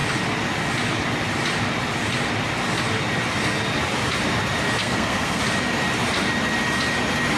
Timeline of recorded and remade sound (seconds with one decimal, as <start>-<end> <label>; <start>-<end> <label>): 0.0-4.8 recorded; 4.8-5.4 remade; 5.4-7.4 recorded